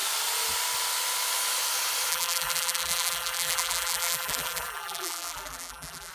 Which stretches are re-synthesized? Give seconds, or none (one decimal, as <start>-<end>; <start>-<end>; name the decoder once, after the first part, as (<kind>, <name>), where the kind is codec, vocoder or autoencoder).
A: 2.1-6.1 (vocoder, BigVGAN v2)